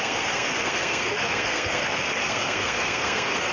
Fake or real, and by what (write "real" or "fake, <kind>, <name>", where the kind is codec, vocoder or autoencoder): fake, codec, SNAC